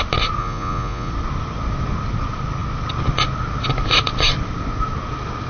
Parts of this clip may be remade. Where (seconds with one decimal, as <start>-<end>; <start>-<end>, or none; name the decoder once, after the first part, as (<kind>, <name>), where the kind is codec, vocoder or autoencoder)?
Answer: 0.4-1.1 (vocoder, Vocos)